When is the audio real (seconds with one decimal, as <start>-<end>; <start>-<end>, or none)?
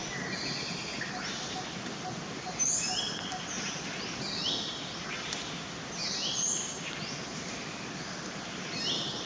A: 0.0-9.3